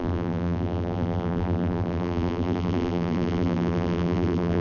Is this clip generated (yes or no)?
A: yes